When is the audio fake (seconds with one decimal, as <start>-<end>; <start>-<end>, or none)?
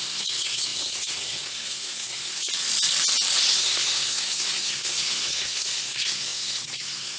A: 0.0-2.5; 3.5-7.2